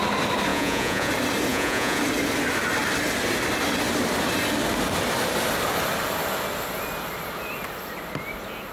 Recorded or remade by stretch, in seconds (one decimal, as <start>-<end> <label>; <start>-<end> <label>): 0.0-0.5 recorded; 0.5-1.1 remade; 1.1-1.5 recorded; 1.5-2.0 remade; 2.0-8.7 recorded